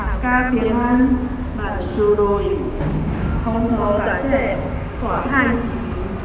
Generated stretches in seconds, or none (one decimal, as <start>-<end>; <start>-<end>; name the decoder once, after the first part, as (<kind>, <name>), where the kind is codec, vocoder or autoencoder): 1.9-3.5 (codec, DAC); 4.5-5.2

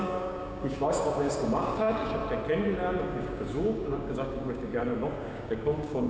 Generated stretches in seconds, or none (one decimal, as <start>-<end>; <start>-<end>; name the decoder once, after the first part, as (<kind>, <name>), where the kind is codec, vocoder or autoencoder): 0.0-2.2 (codec, DAC); 3.0-6.1